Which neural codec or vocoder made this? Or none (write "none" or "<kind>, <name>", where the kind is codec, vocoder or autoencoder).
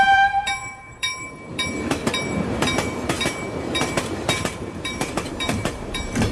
vocoder, BigVGAN v2